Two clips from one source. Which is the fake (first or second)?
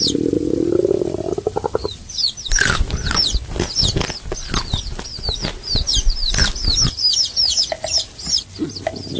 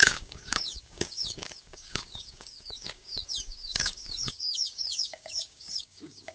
second